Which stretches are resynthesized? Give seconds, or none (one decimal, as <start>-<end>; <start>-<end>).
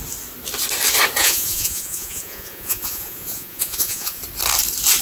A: 1.2-4.2